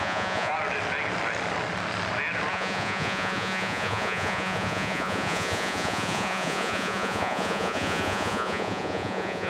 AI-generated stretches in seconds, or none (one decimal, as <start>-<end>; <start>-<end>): 0.0-0.5; 2.5-9.5